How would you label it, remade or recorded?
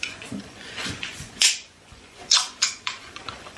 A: remade